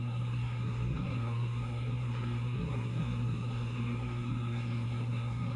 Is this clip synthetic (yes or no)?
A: yes